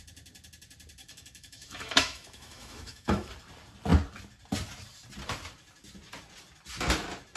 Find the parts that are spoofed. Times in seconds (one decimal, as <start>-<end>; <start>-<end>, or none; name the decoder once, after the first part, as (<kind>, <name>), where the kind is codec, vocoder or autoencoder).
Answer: 1.0-3.3 (autoencoder, DAC-VAE)